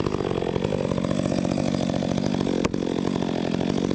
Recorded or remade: recorded